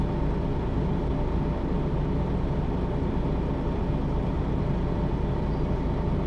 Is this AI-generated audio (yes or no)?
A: no